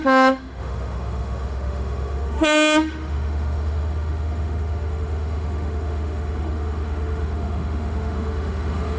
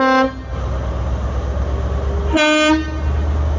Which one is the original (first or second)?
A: second